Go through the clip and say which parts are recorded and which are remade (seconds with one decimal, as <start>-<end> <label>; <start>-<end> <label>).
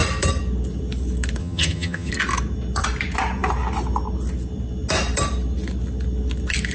0.0-1.4 recorded; 1.4-2.1 remade; 2.1-6.7 recorded